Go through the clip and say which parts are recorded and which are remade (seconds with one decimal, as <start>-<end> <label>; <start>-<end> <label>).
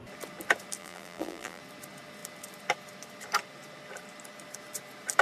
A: 0.0-0.8 recorded; 0.8-1.6 remade; 1.6-5.2 recorded